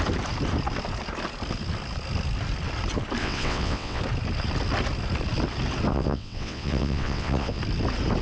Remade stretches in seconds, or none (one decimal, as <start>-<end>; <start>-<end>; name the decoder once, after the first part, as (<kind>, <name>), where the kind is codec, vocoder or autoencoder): 3.2-4.0 (vocoder, WaveNeXt); 5.9-7.6